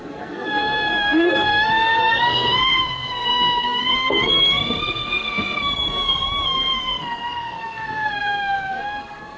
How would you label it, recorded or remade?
remade